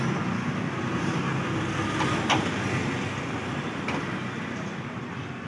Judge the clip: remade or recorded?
recorded